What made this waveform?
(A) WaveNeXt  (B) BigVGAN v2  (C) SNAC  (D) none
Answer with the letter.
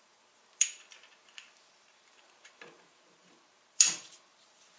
B